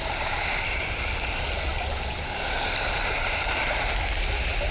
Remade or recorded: recorded